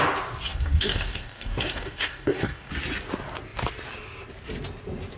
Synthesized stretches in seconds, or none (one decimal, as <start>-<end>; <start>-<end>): 0.5-2.7

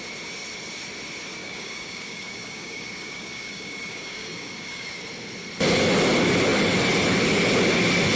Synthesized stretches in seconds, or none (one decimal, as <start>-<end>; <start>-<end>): 1.4-5.0

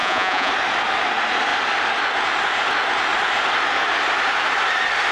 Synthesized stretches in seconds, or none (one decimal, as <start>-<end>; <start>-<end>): 0.0-0.5

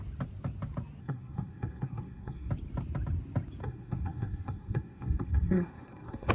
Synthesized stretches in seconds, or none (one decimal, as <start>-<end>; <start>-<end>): 1.0-2.5; 3.6-6.3

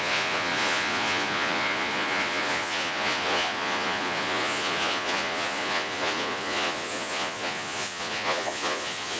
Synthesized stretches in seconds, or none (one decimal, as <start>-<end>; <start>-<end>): 0.0-9.2

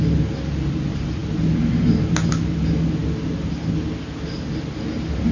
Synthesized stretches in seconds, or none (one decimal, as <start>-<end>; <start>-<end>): none